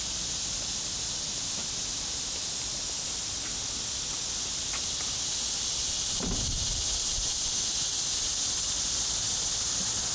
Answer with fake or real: real